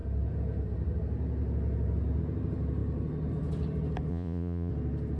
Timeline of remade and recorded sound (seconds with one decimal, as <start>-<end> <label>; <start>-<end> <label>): 0.0-4.1 recorded; 4.1-4.7 remade; 4.7-5.2 recorded